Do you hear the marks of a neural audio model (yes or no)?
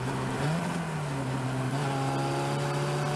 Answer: no